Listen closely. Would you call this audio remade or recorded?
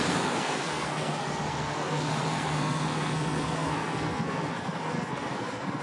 remade